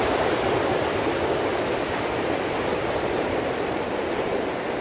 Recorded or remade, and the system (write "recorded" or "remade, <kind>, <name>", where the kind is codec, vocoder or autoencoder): recorded